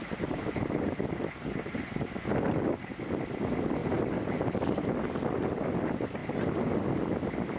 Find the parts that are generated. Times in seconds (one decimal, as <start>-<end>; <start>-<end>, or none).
none